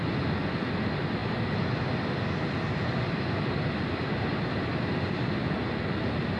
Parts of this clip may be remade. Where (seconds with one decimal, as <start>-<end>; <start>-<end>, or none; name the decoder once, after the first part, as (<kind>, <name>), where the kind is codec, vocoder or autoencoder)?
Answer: none